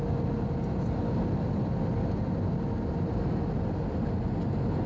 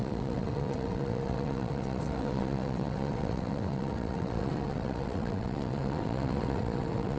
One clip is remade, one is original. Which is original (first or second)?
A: first